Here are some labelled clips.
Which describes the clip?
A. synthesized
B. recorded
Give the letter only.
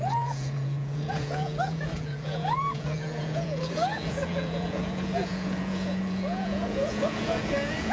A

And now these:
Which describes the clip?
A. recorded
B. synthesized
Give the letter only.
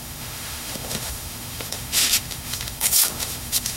B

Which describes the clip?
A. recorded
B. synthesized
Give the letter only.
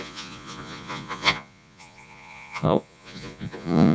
B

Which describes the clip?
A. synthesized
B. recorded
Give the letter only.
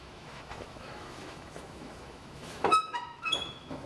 A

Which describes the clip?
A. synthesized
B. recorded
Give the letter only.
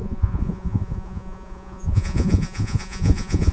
A